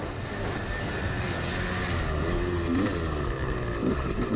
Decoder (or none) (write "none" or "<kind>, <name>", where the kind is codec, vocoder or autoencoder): none